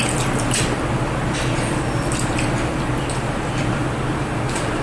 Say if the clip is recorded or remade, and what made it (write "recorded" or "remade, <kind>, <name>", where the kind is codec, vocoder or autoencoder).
recorded